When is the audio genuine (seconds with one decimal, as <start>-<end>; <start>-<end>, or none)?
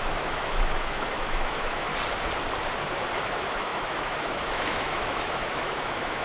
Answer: 1.9-3.2